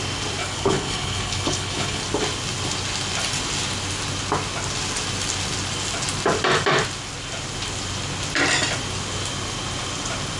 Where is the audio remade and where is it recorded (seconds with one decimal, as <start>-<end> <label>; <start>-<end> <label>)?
0.0-0.4 recorded; 0.4-2.0 remade; 2.0-10.4 recorded